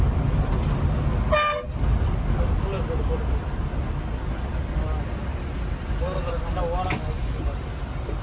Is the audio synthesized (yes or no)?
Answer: no